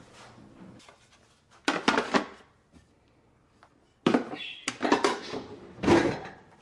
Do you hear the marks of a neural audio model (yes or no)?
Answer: no